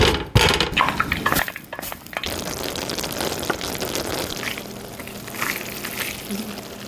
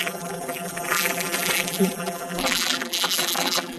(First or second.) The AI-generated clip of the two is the second